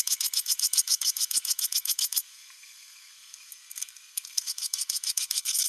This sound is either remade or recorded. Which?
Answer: remade